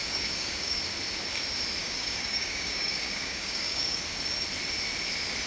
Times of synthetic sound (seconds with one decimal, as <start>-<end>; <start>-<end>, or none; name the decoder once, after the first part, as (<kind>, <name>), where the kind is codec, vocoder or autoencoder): 0.0-0.8 (codec, DAC); 1.8-4.0